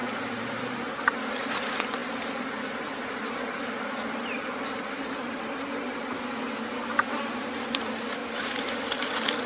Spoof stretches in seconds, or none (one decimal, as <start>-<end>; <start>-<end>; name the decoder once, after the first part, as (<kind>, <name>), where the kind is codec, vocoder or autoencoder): 8.2-8.8 (vocoder, BigVGAN v2)